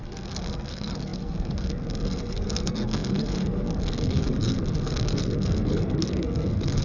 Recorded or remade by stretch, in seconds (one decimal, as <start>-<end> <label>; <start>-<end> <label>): 0.0-6.8 remade